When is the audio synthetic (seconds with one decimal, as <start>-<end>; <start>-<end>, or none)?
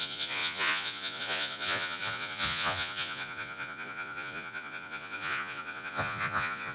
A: 0.0-6.7